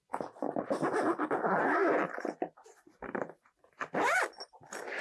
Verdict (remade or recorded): recorded